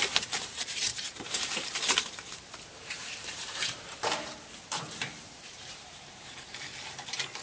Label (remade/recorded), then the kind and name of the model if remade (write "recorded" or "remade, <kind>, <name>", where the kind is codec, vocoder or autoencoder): remade, vocoder, BigVGAN v2